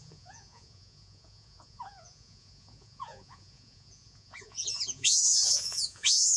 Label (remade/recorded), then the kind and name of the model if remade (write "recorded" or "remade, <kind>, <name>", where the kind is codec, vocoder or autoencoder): remade, vocoder, Vocos